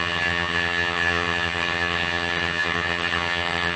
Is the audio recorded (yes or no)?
no